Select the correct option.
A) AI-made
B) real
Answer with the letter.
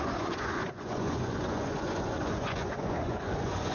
A